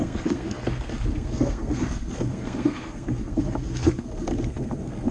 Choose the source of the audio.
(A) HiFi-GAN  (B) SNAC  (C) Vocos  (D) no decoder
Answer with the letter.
B